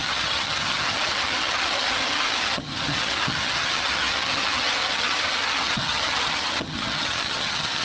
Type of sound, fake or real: fake